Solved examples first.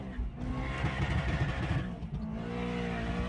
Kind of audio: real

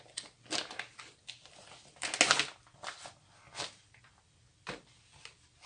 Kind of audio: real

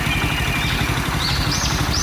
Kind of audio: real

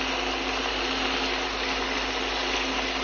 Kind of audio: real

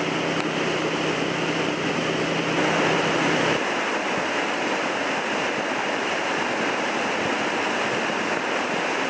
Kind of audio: real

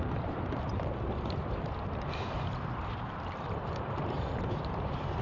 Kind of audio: fake